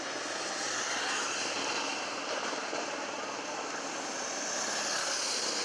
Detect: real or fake real